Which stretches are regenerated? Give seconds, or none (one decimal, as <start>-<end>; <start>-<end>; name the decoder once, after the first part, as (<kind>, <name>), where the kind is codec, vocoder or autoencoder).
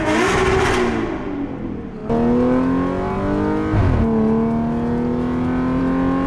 none